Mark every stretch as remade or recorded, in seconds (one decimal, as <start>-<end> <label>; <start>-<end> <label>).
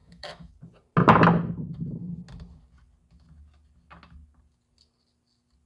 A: 0.0-0.5 remade; 0.5-5.7 recorded